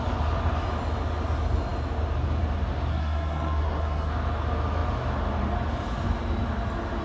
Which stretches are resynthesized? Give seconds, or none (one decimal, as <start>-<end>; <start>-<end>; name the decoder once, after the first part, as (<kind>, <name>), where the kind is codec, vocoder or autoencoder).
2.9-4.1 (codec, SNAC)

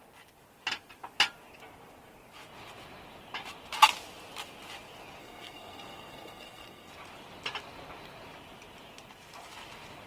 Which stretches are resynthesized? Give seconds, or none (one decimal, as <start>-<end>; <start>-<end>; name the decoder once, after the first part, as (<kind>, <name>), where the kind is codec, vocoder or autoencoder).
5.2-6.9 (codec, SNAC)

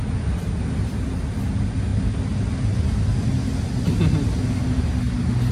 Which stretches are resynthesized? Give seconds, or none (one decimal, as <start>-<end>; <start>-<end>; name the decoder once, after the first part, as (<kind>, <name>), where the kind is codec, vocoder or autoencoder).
none

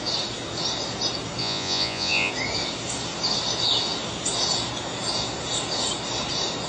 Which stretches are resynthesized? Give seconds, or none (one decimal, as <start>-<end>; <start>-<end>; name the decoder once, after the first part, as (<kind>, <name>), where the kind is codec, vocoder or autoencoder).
1.4-2.3 (vocoder, Vocos)

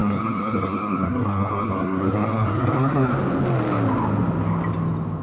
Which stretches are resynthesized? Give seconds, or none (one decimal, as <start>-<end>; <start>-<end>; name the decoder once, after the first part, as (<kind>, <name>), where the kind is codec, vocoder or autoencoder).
0.0-3.1 (codec, SNAC)

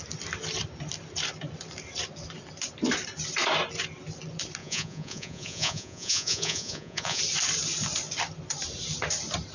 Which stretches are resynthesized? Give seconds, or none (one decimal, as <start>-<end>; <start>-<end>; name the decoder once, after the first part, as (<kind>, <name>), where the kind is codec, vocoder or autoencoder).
4.6-7.2 (vocoder, Vocos)

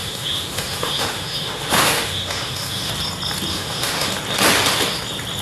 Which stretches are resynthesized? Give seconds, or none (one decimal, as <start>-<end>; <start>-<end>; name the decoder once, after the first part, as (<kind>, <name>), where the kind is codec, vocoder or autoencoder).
0.0-2.9 (autoencoder, DAC-VAE); 3.5-4.1

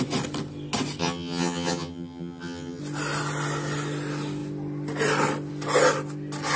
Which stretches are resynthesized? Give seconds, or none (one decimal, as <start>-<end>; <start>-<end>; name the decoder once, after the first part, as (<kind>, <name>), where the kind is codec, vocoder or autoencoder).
1.0-2.8 (vocoder, HiFi-GAN)